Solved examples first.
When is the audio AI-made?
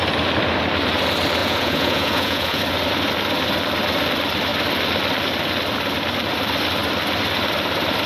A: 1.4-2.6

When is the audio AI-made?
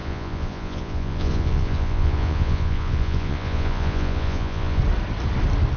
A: 0.0-4.8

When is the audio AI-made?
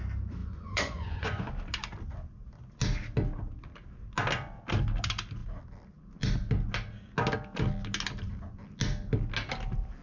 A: 0.4-1.5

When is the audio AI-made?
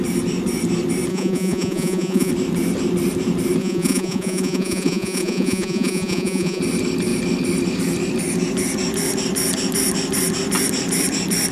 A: 1.1-2.3; 3.6-6.6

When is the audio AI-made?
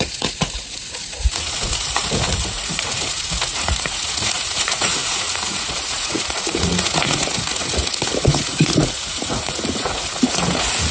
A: 0.0-10.9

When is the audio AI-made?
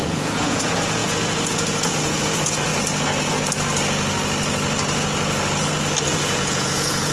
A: 0.0-2.7; 6.0-7.1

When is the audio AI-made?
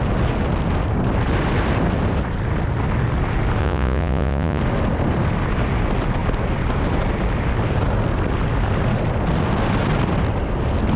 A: 3.6-4.6